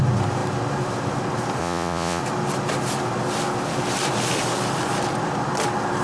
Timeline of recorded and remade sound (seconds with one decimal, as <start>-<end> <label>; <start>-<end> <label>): 0.0-1.6 recorded; 1.6-2.2 remade; 2.2-6.0 recorded